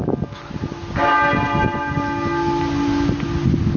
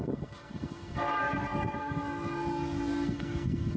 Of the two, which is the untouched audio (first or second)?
first